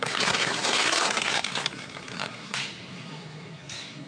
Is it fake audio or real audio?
fake